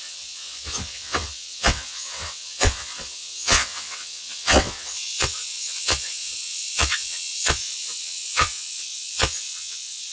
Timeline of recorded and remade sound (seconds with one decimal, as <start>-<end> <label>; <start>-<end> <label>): 0.0-10.1 remade

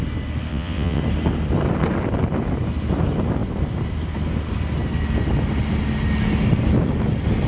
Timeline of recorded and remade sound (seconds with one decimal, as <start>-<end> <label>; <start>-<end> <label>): 0.0-0.5 recorded; 0.5-1.0 remade; 1.0-7.5 recorded

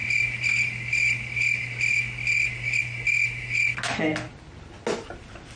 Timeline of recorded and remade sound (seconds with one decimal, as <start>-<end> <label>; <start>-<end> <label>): 0.0-5.6 recorded

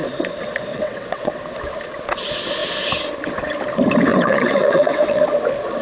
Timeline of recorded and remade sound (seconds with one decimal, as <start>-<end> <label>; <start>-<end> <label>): 0.0-0.7 recorded; 0.7-1.4 remade; 1.4-4.1 recorded; 4.1-5.2 remade; 5.2-5.8 recorded